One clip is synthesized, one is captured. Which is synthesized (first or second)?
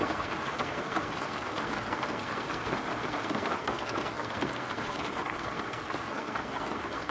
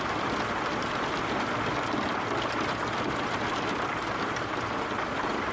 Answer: first